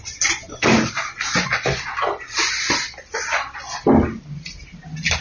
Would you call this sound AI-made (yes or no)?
no